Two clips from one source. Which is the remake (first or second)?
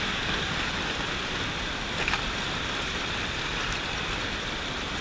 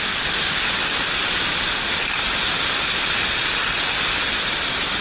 first